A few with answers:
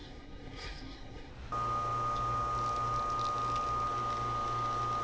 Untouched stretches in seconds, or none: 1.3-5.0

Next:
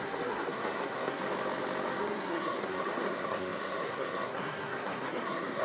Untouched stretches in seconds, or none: 1.2-2.0

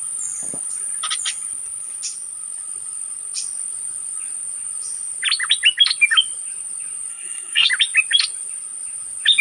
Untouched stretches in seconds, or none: 0.0-7.1; 7.7-9.4

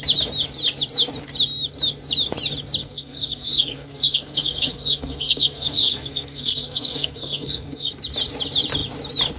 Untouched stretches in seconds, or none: 0.0-2.8; 7.9-9.4

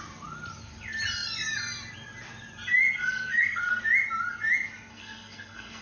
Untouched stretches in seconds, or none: 0.0-3.0; 3.8-4.9